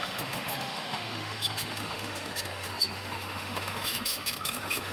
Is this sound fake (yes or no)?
yes